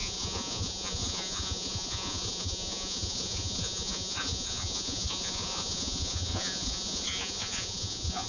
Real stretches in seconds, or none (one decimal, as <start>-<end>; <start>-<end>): none